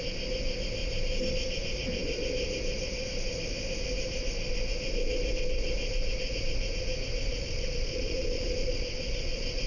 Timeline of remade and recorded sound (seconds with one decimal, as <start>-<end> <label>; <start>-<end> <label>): 0.0-7.3 recorded; 7.3-9.7 remade

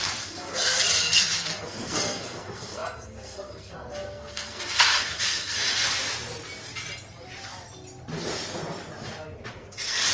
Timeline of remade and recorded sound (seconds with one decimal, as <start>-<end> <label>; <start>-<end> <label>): 0.0-6.0 remade; 6.0-9.5 recorded; 9.5-10.1 remade

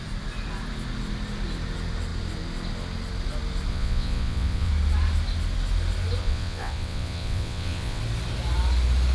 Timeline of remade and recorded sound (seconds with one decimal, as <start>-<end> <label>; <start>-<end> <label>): 0.0-3.7 recorded; 3.7-4.7 remade; 4.7-6.2 recorded; 6.2-8.0 remade; 8.0-9.1 recorded